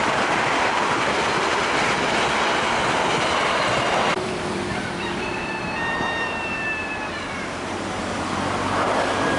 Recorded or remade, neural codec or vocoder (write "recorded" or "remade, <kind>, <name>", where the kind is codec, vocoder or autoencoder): remade, vocoder, BigVGAN v2